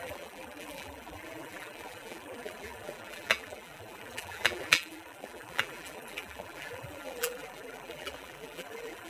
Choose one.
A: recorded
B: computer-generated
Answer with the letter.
B